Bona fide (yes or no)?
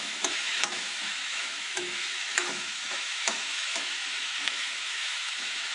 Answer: no